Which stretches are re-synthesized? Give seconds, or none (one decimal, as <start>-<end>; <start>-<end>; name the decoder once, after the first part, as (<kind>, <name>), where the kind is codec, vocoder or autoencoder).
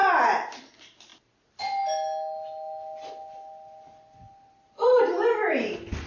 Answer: none